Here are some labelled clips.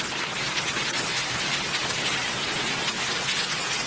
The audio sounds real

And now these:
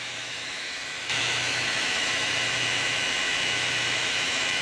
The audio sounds fake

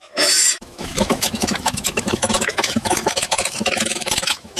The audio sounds fake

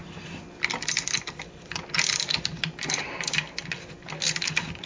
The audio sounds real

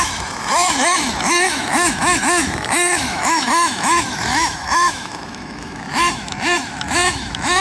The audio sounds fake